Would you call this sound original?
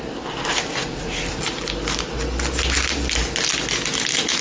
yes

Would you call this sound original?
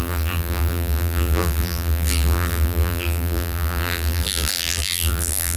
no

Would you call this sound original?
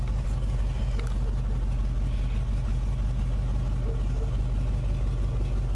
yes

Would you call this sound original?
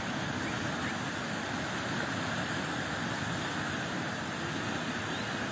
yes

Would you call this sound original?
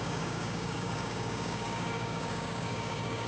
no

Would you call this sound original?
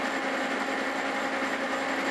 yes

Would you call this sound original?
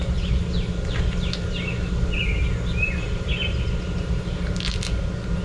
yes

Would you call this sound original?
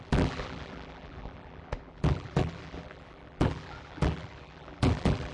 no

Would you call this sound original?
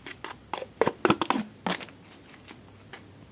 yes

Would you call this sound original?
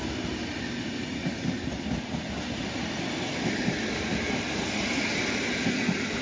yes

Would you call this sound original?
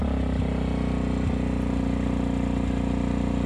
yes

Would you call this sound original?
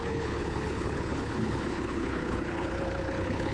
no